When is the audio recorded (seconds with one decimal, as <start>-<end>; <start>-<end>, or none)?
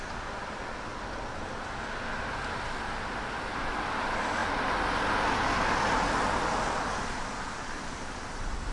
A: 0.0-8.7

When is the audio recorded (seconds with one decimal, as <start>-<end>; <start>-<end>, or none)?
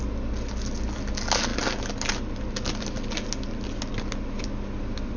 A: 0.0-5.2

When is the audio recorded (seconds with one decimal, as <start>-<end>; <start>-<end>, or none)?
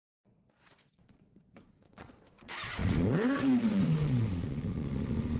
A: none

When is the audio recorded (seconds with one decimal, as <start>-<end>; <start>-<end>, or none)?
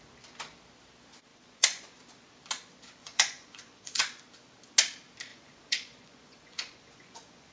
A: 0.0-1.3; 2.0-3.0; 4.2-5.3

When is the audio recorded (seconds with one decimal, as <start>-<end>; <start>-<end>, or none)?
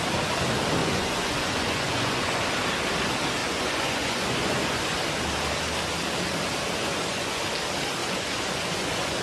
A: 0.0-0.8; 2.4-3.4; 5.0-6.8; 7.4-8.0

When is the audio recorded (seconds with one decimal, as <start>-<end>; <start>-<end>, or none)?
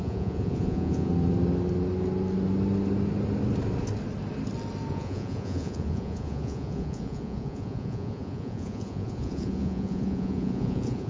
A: 1.1-4.9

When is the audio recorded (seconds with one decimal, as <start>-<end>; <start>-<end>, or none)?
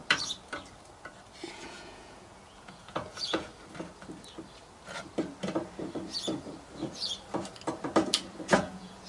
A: 0.0-1.5; 3.5-8.5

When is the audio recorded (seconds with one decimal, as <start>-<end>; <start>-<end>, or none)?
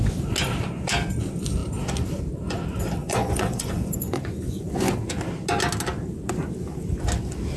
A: 0.0-3.0; 4.9-7.6